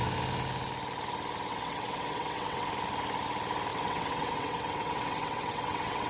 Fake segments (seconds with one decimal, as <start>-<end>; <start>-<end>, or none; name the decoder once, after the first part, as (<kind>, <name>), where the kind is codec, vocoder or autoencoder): 1.5-2.7 (vocoder, WaveNeXt); 3.7-6.1